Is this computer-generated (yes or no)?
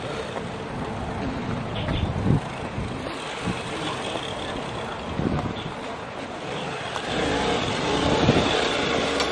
no